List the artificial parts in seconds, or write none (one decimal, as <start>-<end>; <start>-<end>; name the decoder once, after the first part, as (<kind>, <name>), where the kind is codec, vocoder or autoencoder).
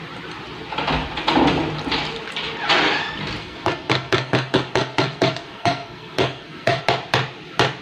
3.4-6.8 (codec, SNAC)